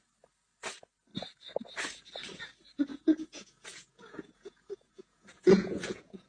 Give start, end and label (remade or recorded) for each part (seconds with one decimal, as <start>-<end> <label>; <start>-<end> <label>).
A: 0.0-2.9 recorded; 2.9-6.3 remade